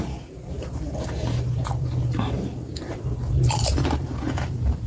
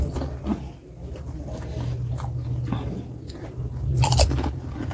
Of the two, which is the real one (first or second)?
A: second